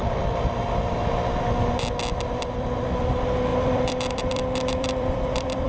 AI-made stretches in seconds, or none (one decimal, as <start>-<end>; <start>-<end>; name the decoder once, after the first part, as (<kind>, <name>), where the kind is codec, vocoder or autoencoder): 3.5-5.7 (vocoder, BigVGAN v2)